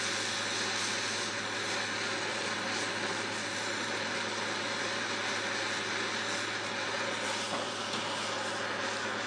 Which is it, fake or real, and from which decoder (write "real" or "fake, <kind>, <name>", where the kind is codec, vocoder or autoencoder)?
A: real